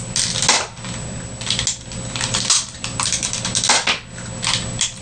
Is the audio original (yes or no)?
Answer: yes